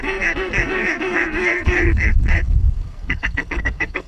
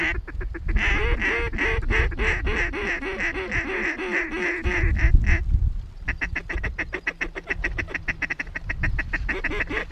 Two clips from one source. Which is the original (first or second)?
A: second